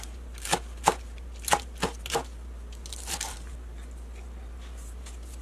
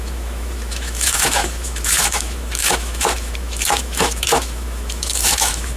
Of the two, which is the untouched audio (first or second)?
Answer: first